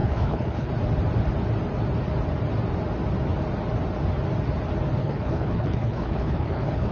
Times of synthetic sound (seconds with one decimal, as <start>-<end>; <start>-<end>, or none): 0.0-0.7; 5.0-6.9